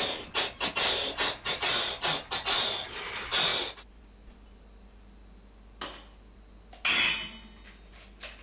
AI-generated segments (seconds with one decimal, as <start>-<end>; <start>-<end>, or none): none